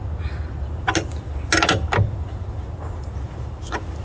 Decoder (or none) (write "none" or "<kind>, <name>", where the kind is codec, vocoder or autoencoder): none